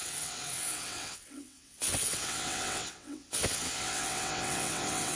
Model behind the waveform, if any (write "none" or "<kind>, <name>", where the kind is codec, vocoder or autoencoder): vocoder, WaveNeXt